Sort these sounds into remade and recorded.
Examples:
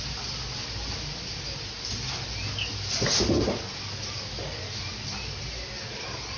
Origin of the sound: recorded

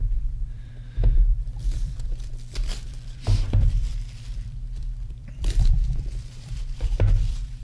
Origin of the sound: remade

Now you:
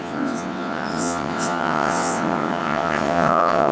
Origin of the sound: remade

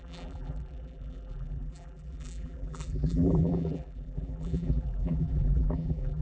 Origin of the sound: remade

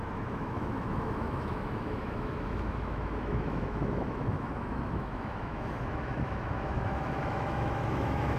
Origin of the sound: remade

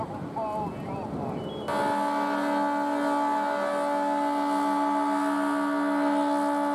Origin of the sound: recorded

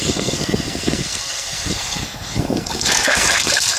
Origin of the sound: remade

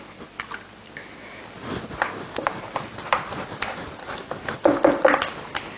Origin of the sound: recorded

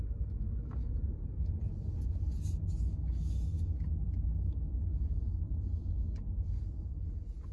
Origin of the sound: recorded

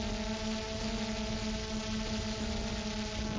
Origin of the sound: recorded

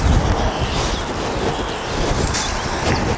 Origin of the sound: recorded